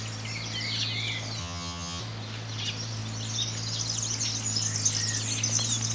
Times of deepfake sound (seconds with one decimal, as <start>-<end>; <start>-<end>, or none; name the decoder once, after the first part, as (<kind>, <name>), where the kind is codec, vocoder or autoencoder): 1.4-2.0 (vocoder, HiFi-GAN)